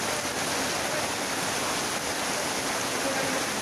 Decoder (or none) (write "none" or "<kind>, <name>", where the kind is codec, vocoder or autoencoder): none